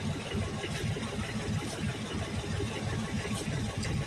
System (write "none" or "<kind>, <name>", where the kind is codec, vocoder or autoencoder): none